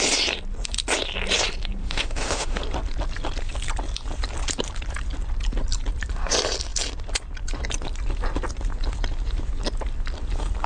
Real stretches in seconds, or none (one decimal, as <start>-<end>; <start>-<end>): 0.0-1.8; 2.6-10.7